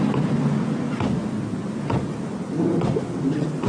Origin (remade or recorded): recorded